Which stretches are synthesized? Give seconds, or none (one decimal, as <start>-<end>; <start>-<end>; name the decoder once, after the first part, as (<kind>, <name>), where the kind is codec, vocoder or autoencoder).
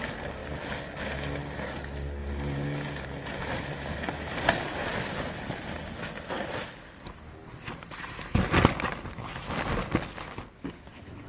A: none